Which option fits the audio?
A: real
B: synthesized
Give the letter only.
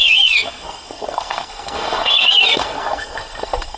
B